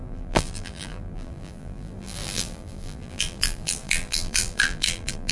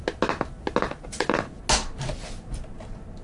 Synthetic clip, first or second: first